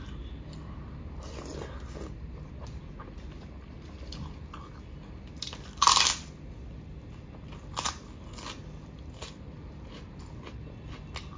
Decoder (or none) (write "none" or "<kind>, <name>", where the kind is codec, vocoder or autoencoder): none